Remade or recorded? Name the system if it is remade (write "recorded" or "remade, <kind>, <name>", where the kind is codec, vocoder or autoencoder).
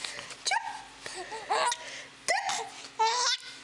recorded